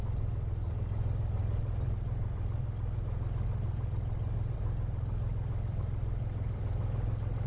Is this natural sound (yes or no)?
yes